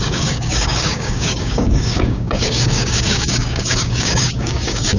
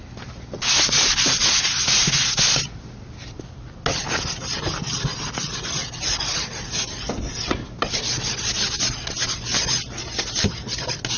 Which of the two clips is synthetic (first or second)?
first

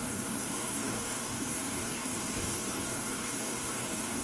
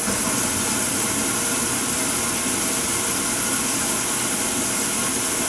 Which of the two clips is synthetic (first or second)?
first